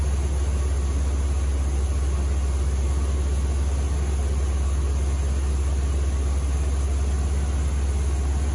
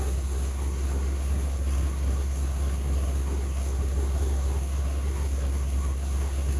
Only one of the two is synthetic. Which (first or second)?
second